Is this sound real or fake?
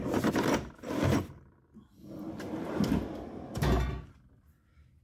real